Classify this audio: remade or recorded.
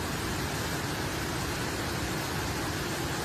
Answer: recorded